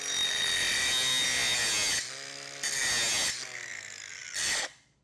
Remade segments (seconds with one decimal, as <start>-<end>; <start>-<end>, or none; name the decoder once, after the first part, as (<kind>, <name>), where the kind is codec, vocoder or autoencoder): 4.2-5.0 (vocoder, BigVGAN v2)